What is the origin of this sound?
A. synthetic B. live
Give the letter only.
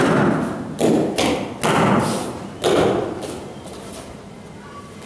B